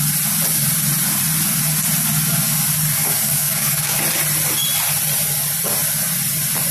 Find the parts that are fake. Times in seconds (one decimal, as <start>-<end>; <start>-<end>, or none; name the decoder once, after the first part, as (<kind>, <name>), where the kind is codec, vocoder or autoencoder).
3.0-4.0 (codec, DAC)